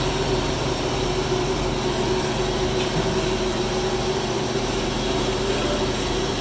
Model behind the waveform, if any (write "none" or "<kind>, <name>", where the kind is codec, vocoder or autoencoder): none